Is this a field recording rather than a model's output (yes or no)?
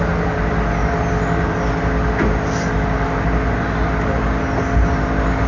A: yes